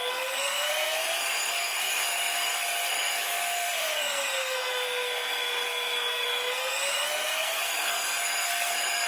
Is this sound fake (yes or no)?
yes